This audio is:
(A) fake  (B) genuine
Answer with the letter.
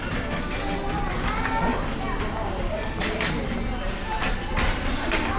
B